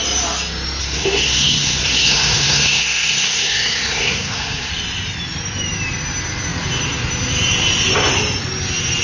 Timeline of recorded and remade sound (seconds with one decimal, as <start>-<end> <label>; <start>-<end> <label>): 0.0-0.8 recorded; 0.8-4.7 remade; 4.7-9.0 recorded